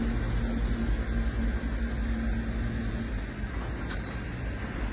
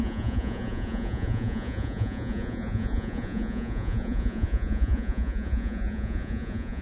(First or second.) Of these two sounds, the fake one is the second